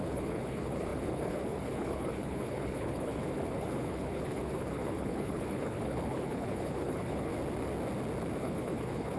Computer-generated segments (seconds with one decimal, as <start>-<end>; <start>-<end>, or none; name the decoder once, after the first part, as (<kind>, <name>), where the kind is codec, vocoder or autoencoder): 0.0-7.3 (codec, HILCodec); 8.4-9.2

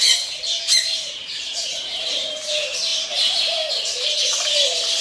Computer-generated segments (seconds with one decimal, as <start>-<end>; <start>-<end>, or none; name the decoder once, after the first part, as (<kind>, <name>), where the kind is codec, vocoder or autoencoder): 0.0-5.0 (vocoder, BigVGAN v2)